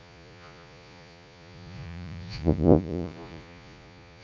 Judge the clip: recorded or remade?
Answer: remade